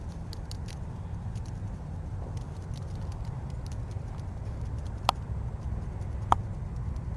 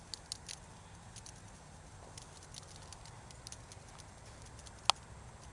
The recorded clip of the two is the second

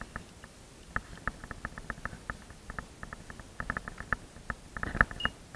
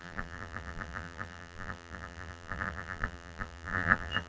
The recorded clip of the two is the first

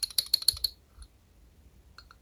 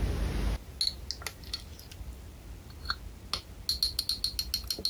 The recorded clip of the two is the second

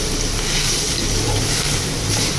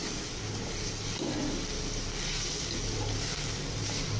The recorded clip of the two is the second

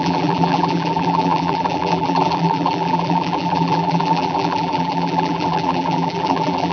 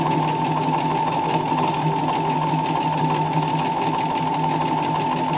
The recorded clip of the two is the second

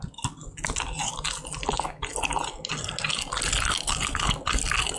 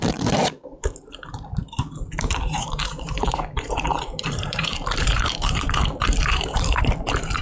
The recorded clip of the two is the first